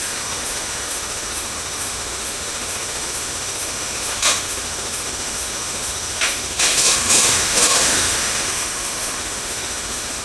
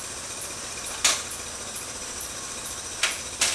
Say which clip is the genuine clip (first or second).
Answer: second